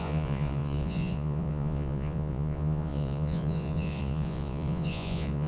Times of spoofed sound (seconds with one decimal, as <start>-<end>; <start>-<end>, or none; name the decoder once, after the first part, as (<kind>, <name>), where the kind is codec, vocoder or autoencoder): 0.0-5.5 (vocoder, Vocos)